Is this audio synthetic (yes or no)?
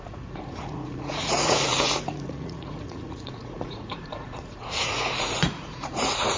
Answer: yes